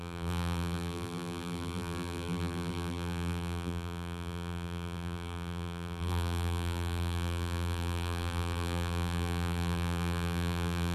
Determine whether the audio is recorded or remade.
remade